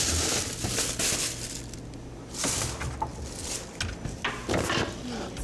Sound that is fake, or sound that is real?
real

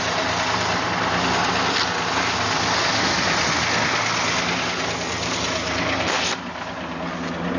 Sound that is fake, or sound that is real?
real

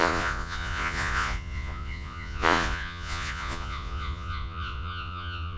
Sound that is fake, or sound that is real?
fake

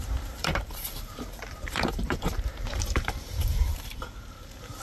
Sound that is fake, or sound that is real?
fake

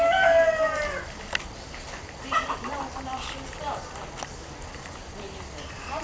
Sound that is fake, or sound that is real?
real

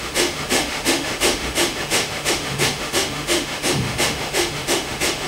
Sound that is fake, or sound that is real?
fake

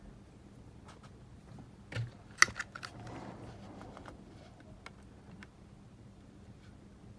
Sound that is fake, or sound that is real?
real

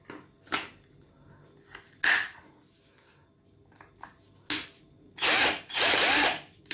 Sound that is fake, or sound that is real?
real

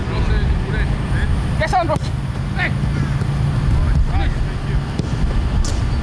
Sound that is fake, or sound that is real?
real